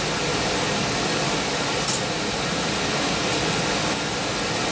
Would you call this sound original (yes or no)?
yes